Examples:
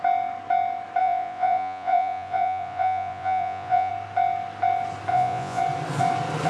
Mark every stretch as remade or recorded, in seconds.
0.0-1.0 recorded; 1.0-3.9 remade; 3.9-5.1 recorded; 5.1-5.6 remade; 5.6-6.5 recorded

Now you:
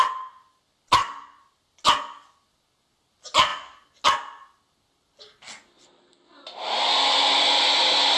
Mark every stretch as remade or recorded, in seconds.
0.0-8.2 recorded